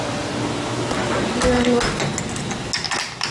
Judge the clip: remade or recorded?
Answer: recorded